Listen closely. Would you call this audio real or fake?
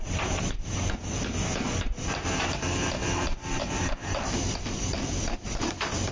fake